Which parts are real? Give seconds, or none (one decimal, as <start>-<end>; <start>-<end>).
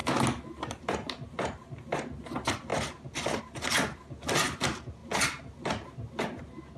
0.0-6.8